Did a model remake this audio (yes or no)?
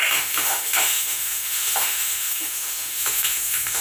yes